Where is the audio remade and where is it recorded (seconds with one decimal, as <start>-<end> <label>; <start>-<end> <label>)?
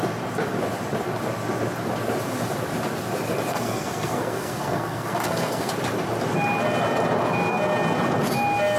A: 0.0-3.5 recorded; 3.5-5.7 remade; 5.7-8.8 recorded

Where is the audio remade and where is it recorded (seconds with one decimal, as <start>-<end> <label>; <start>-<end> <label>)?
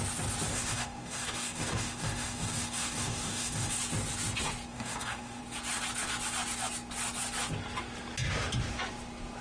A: 0.0-0.5 recorded; 0.5-3.8 remade; 3.8-4.7 recorded; 4.7-5.4 remade; 5.4-9.4 recorded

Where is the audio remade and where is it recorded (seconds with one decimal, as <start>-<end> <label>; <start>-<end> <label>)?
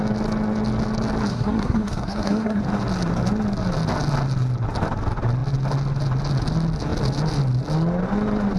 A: 0.0-1.3 recorded; 1.3-2.6 remade; 2.6-8.6 recorded